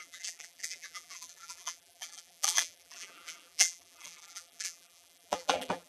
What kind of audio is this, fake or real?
fake